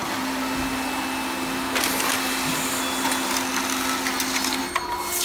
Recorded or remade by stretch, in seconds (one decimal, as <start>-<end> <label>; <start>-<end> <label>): 0.0-5.2 recorded